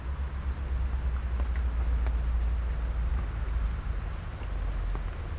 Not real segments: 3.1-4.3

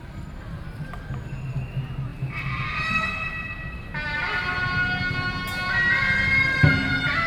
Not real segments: none

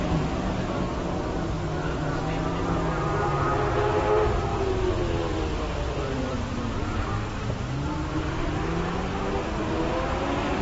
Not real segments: 4.5-5.0; 6.3-6.8

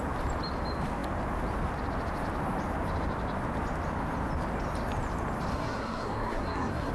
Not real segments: 5.5-6.9

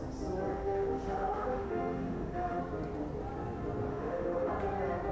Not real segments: 0.5-2.6; 3.9-4.5

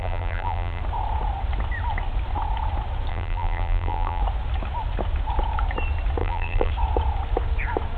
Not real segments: 0.0-0.8; 3.1-4.2; 6.2-6.7